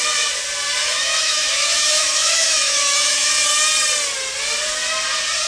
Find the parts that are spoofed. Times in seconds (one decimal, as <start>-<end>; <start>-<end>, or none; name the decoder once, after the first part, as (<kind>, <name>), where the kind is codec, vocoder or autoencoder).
0.8-3.3 (autoencoder, DAC-VAE)